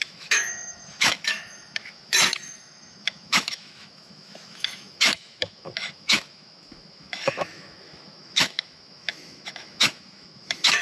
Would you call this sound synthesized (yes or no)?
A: yes